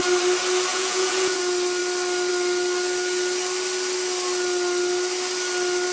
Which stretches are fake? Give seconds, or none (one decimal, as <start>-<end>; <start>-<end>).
0.7-1.4